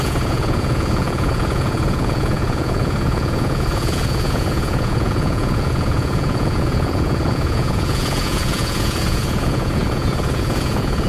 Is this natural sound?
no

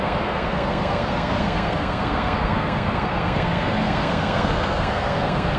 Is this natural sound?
no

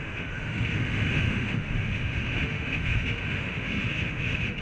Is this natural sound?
no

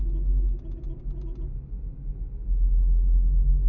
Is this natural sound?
yes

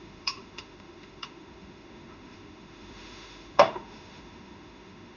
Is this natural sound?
no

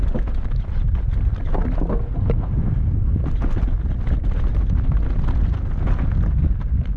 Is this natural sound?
yes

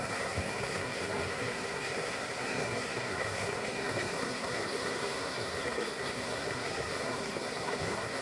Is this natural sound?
no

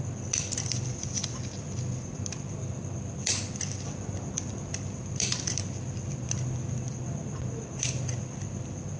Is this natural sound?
no